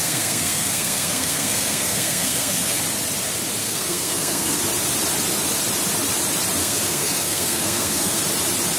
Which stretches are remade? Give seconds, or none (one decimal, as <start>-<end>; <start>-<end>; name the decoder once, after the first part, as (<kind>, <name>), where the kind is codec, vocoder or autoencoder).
0.0-2.8 (codec, SNAC); 3.6-4.6; 6.6-8.2